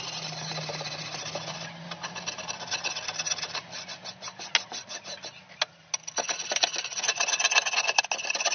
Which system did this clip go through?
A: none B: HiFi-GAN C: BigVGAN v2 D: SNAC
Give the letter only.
A